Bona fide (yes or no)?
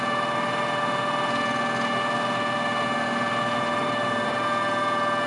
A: yes